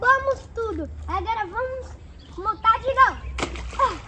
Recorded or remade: recorded